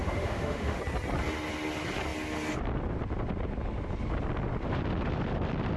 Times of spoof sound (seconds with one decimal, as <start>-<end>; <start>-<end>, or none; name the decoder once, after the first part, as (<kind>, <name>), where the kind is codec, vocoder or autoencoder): 0.0-0.8 (autoencoder, DAC-VAE)